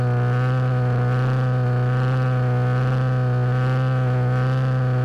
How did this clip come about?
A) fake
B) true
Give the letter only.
B